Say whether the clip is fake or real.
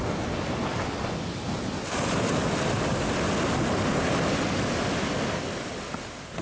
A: real